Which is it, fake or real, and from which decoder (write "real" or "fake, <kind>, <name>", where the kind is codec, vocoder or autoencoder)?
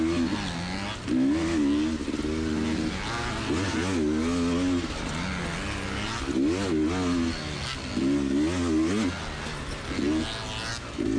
real